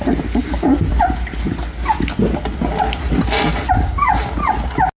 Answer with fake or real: real